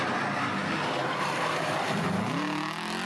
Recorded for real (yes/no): yes